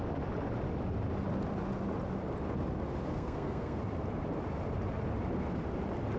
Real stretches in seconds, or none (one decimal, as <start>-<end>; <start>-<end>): 0.0-3.1; 3.8-6.2